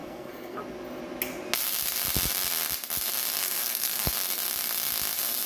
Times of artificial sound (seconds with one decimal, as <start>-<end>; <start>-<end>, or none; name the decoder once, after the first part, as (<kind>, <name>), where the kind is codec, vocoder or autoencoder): 0.0-0.6 (codec, SNAC); 3.4-4.1